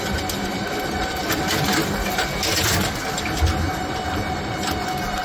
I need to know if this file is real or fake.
real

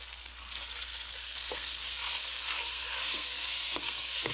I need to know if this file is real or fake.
fake